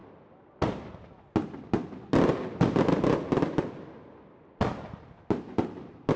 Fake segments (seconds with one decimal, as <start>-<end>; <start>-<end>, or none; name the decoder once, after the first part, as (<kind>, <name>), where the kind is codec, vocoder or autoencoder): none